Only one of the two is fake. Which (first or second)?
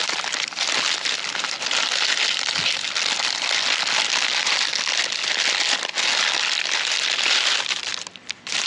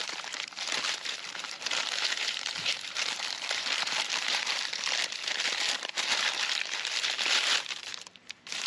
second